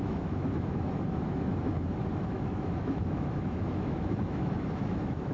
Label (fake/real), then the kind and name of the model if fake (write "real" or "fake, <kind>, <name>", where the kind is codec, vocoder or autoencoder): fake, autoencoder, DAC-VAE